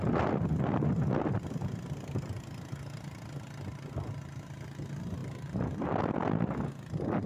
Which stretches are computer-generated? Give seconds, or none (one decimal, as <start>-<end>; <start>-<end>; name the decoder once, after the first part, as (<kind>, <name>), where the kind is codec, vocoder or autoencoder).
5.2-6.1 (vocoder, BigVGAN v2)